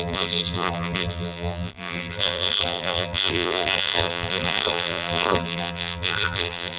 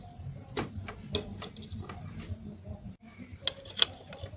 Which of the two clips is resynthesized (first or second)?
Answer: first